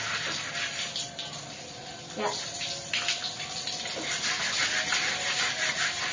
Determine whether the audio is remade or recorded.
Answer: recorded